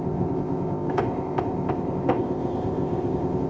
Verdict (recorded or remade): remade